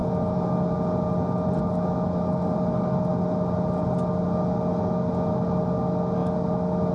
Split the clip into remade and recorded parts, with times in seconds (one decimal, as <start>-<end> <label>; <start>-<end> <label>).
0.0-6.9 recorded